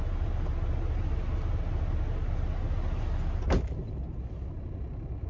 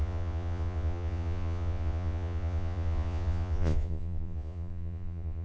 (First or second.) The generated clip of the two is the second